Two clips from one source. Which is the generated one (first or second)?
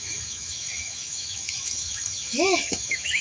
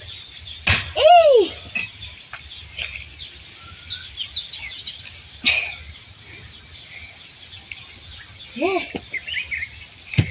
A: first